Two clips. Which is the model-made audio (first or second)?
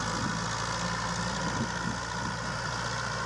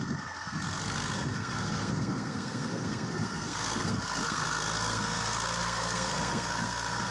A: second